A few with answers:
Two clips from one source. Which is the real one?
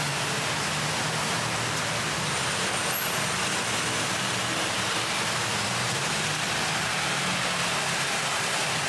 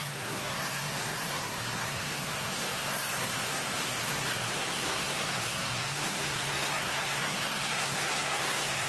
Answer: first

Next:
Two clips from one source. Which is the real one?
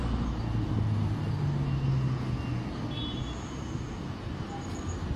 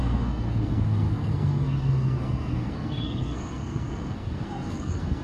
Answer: first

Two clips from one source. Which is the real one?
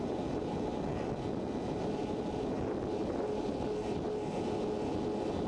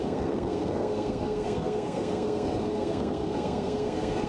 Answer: first